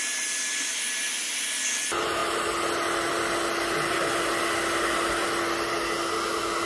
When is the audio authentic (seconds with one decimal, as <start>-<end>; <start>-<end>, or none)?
0.0-6.7